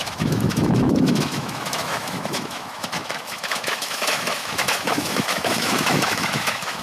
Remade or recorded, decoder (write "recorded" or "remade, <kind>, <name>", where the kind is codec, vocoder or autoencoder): remade, autoencoder, DAC-VAE